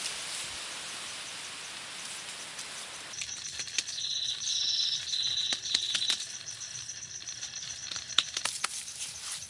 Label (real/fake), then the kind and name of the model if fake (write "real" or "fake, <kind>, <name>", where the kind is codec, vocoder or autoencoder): real